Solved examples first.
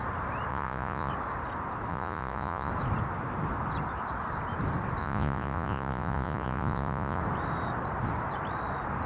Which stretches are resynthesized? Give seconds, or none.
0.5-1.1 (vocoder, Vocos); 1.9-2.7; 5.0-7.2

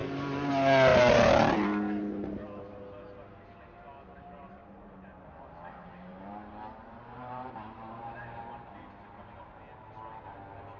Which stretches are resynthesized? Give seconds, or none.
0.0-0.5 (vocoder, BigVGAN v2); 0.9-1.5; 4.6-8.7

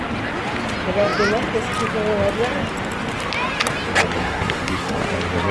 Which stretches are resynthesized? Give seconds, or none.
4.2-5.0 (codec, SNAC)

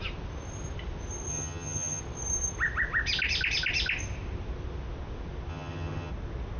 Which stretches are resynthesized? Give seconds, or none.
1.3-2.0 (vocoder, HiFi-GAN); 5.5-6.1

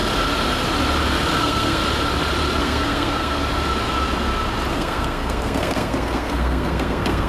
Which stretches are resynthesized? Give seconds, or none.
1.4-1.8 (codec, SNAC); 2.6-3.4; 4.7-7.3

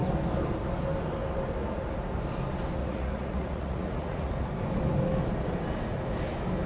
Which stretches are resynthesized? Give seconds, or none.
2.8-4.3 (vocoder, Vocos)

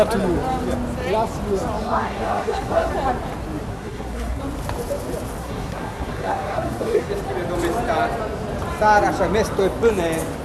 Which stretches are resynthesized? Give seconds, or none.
1.8-2.9 (codec, SNAC); 3.7-4.4; 5.4-7.1

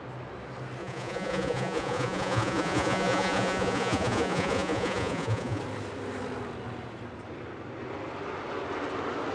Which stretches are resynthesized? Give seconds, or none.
0.8-5.6 (vocoder, Vocos)